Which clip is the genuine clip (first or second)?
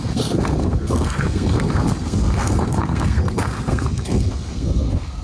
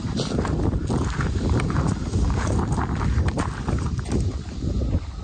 second